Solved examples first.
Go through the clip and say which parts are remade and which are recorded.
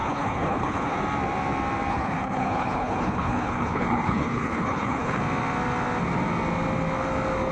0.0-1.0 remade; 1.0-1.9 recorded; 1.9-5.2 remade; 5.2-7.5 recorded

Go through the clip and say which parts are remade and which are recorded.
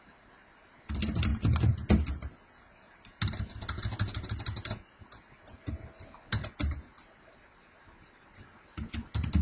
0.0-9.4 recorded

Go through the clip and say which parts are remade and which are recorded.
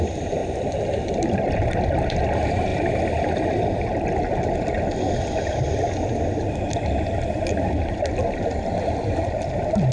0.0-9.9 recorded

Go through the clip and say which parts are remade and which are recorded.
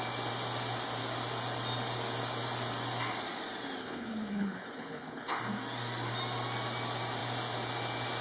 0.0-3.8 recorded; 3.8-5.4 remade; 5.4-8.2 recorded